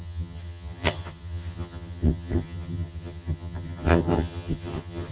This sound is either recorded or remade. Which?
remade